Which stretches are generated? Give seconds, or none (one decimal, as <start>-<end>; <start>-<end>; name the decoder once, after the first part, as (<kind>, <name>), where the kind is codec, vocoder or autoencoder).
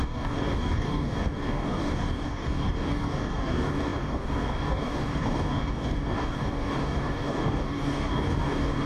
0.0-8.9 (codec, DAC)